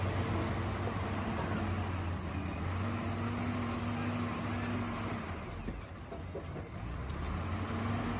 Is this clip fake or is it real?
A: real